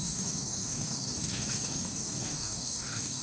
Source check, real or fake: fake